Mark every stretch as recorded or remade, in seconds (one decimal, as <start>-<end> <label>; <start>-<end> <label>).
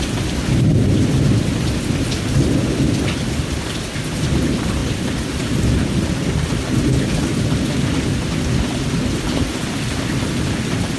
0.0-4.8 recorded; 4.8-6.1 remade; 6.1-11.0 recorded